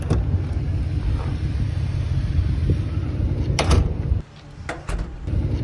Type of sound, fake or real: real